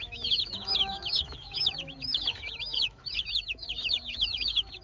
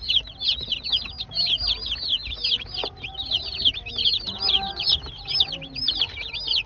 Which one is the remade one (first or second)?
first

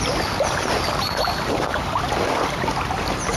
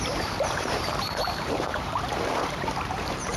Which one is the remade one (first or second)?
second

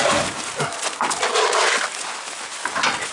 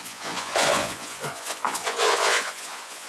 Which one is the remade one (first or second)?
second